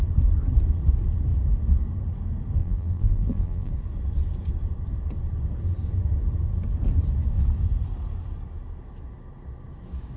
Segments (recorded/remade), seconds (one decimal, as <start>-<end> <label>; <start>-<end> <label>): 0.0-2.6 recorded; 2.6-3.7 remade; 3.7-10.2 recorded